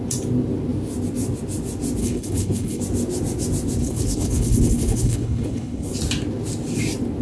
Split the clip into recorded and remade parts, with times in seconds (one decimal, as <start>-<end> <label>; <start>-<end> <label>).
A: 0.0-2.0 recorded; 2.0-2.8 remade; 2.8-3.8 recorded; 3.8-5.9 remade; 5.9-7.2 recorded